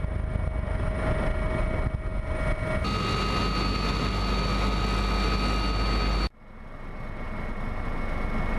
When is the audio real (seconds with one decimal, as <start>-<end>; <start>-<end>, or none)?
0.0-8.6